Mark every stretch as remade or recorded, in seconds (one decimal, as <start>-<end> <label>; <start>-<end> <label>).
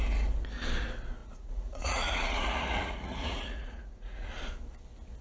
0.0-1.2 recorded; 1.2-4.3 remade; 4.3-5.2 recorded